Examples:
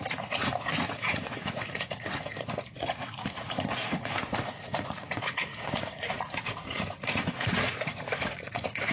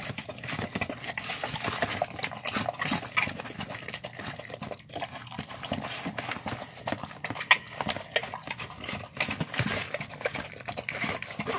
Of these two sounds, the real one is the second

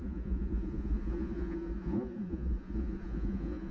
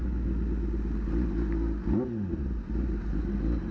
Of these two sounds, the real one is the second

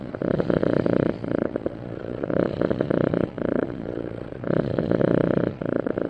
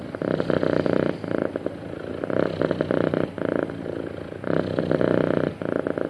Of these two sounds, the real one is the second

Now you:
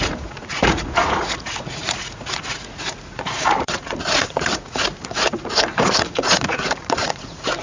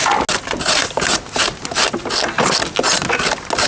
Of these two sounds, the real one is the second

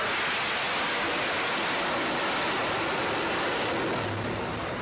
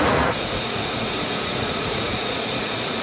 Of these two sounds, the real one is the first